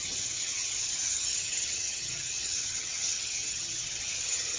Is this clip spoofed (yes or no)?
yes